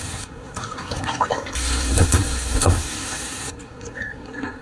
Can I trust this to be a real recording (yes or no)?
no